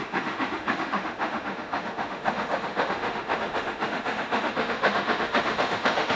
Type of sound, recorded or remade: remade